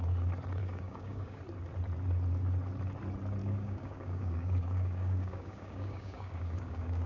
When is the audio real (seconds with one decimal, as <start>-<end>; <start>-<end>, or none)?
0.0-0.6; 1.4-3.4